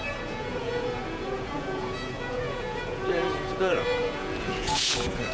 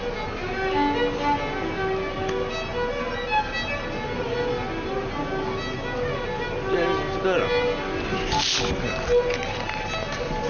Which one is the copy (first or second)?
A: first